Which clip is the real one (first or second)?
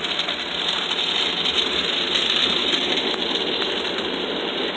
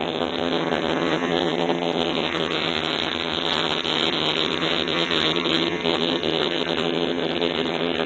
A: first